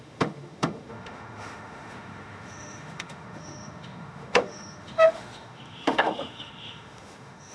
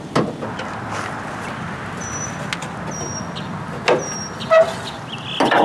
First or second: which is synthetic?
first